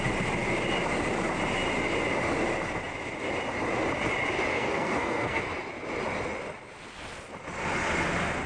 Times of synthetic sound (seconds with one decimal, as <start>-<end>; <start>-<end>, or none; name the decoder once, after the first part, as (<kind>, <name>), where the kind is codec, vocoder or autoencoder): 4.5-5.4 (codec, SNAC)